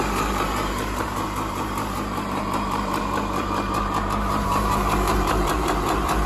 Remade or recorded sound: remade